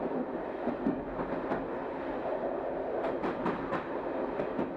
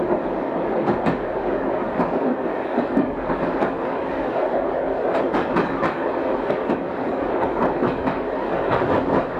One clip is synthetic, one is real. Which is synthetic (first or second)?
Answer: second